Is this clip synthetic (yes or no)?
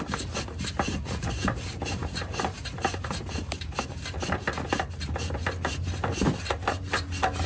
no